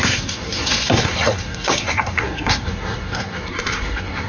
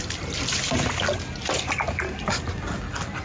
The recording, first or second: second